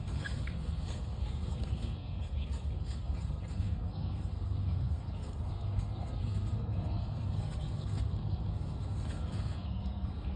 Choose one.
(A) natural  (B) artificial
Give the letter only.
B